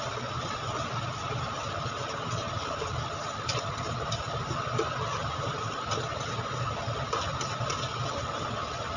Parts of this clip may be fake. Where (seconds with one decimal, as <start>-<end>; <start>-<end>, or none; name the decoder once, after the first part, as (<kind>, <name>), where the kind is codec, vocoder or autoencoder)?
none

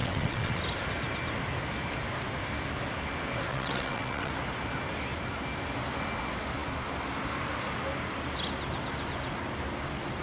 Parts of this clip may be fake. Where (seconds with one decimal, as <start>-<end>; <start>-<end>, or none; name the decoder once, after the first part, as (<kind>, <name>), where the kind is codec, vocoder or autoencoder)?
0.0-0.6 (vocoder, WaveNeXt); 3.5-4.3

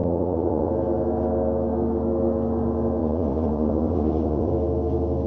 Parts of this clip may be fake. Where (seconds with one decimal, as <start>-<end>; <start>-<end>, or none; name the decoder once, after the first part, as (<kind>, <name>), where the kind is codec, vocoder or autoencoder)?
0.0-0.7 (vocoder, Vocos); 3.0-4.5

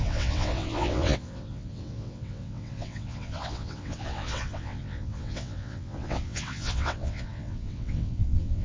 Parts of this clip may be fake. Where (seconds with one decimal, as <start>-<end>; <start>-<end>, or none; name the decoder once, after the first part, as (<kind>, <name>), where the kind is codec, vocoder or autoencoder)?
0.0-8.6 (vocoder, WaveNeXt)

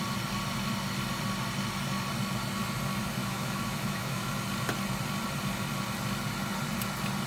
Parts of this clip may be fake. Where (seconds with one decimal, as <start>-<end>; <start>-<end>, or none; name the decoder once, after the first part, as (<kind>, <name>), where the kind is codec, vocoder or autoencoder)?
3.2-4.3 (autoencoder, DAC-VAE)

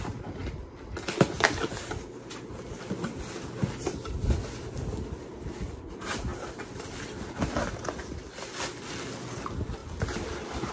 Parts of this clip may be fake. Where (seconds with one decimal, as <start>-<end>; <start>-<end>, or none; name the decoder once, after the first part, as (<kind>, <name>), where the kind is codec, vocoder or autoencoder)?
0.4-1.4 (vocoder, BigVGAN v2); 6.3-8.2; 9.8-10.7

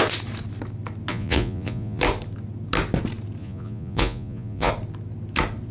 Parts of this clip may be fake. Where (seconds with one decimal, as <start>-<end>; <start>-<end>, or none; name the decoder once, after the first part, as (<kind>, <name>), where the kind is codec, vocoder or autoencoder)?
1.1-2.0 (vocoder, Vocos); 3.4-4.7